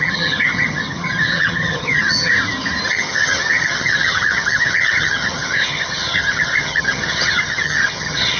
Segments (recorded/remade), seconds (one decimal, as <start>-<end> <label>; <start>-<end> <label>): 0.0-2.3 remade; 2.3-2.9 recorded; 2.9-8.4 remade